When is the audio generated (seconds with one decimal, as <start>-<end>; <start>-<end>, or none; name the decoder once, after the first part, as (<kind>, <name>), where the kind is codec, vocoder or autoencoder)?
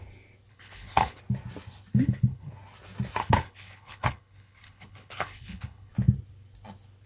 0.5-1.2 (codec, HILCodec); 1.9-2.5; 3.2-5.9